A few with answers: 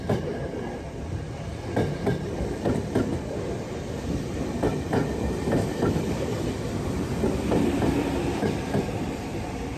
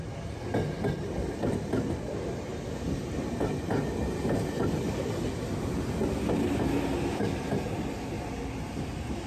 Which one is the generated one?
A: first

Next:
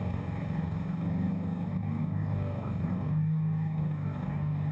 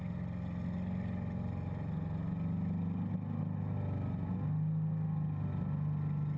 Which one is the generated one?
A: first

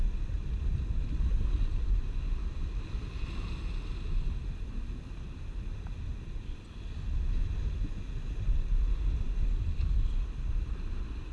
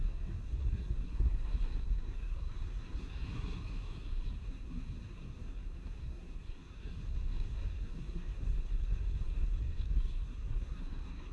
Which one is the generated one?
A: second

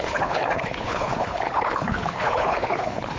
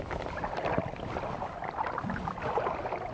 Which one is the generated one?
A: first